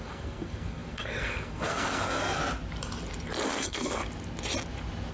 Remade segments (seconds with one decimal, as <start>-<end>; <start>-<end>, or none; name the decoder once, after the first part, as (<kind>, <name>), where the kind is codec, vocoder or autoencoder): 0.0-2.4 (codec, SNAC); 3.5-4.0